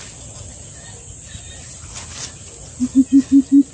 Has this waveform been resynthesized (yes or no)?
no